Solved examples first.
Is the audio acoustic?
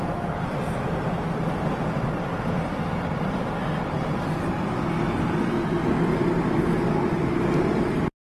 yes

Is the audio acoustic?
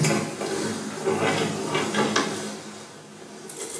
yes